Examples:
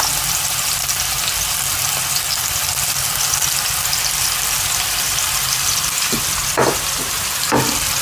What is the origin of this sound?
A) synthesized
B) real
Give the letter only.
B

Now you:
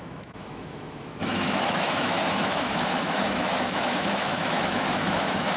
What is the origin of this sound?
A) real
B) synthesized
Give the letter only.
B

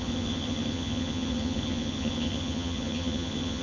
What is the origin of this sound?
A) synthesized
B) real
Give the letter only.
A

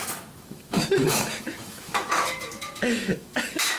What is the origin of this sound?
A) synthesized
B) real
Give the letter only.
A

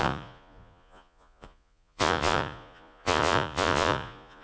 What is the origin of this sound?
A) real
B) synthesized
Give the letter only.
B